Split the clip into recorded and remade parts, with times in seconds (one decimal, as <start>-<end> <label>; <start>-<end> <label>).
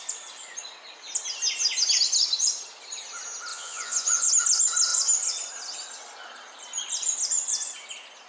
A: 0.0-3.5 recorded; 3.5-4.3 remade; 4.3-8.3 recorded